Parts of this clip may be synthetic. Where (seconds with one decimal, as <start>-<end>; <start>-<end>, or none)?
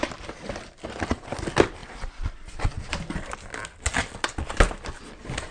1.8-3.0